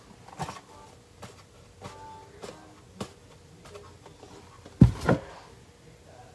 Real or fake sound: real